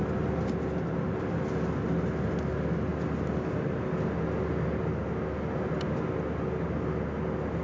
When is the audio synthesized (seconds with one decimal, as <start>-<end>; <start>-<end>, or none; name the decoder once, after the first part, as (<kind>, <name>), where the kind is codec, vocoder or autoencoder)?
none